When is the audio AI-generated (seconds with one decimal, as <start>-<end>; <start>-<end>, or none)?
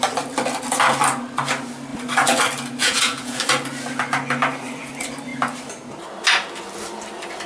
2.8-3.4